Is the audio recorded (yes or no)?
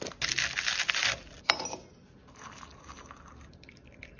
yes